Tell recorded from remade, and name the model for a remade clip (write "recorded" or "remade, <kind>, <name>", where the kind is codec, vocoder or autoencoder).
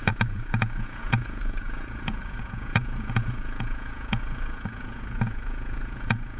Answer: remade, vocoder, Vocos